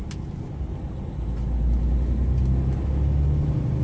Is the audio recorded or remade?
recorded